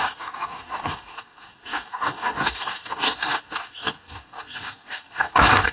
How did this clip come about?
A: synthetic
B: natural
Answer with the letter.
A